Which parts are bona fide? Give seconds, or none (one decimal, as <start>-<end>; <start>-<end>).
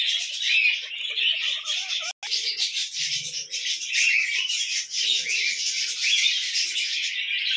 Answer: 0.0-7.6